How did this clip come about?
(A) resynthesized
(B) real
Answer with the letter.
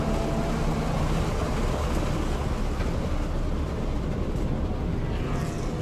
B